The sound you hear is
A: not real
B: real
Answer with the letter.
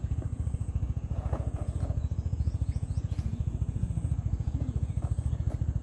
A